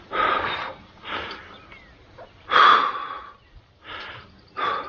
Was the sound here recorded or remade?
recorded